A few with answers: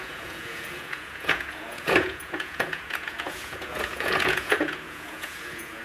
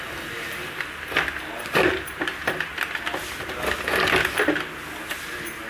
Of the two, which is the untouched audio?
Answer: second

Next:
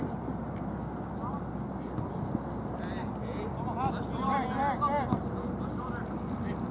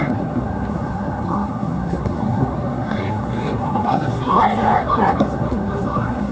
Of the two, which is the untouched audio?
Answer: first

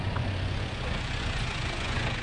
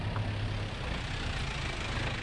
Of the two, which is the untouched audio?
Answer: second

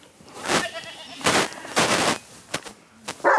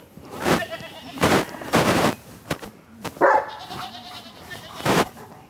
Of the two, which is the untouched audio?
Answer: first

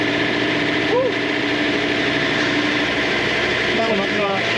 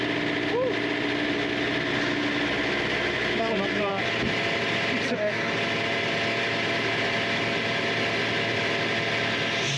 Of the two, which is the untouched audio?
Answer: second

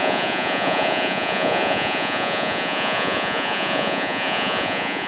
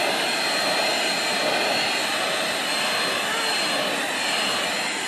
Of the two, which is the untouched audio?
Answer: second